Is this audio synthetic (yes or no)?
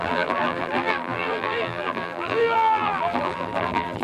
yes